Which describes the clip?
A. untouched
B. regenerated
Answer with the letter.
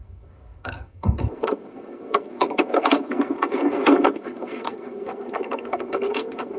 B